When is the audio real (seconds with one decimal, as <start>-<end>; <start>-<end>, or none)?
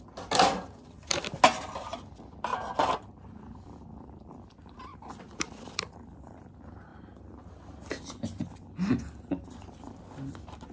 0.0-2.5; 3.1-4.9; 6.4-6.9; 7.5-10.7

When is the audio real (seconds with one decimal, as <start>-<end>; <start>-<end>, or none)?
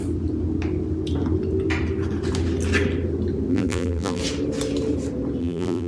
0.0-3.5; 4.2-5.4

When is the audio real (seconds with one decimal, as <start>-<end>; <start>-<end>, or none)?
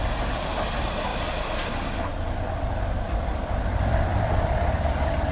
0.0-1.1; 1.7-2.1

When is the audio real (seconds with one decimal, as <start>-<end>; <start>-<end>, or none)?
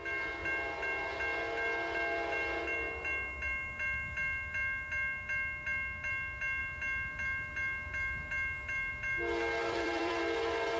0.0-9.6; 10.1-10.8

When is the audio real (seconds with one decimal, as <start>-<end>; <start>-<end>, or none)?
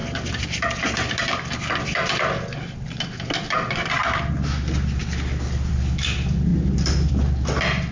4.3-7.9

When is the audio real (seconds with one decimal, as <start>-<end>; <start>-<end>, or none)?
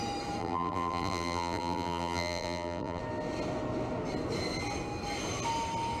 0.0-0.4; 3.0-6.0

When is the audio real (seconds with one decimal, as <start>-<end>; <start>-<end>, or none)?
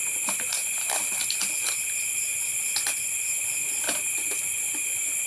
0.0-5.3